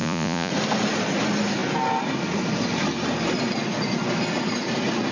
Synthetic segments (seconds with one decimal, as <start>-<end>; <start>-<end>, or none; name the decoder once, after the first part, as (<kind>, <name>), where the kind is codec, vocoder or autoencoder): 0.0-0.5 (vocoder, Vocos)